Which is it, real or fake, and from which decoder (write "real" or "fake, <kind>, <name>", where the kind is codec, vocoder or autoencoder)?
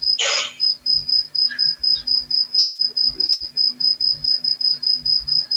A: real